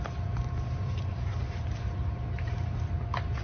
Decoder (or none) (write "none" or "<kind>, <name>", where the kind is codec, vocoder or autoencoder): vocoder, BigVGAN v2